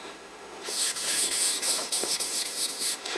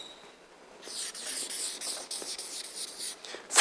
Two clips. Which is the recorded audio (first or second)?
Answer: second